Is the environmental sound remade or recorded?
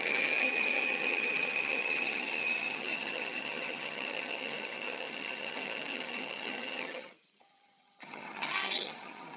remade